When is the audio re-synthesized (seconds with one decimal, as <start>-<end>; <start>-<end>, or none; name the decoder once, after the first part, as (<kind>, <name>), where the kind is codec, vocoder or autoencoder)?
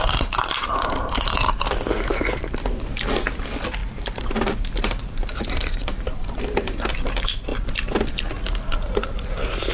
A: 3.8-6.4 (vocoder, BigVGAN v2)